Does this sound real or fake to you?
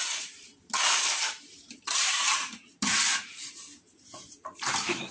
fake